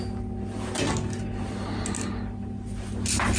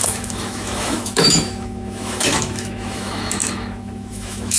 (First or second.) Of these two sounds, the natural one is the first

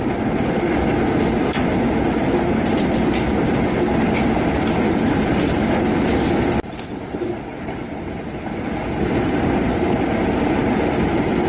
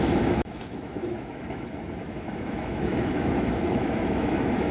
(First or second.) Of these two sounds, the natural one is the first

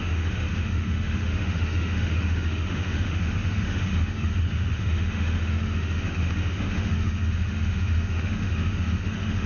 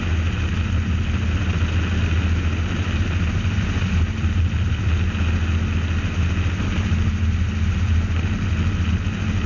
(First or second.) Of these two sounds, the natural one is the second